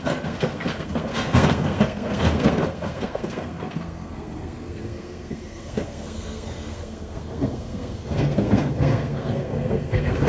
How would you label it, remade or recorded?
remade